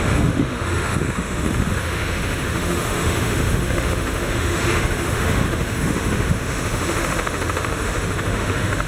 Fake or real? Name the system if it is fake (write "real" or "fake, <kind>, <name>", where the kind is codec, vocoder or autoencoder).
fake, autoencoder, DAC-VAE